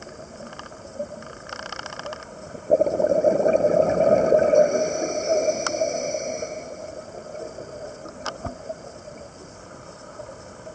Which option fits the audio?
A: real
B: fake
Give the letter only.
A